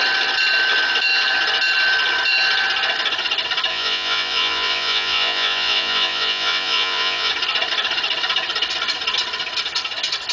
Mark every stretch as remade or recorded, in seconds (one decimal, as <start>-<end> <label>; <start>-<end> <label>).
0.0-3.7 recorded; 3.7-7.3 remade; 7.3-10.3 recorded